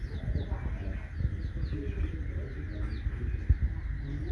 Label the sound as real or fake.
real